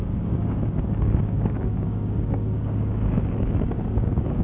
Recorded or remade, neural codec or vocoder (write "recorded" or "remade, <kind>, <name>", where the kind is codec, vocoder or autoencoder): remade, codec, DAC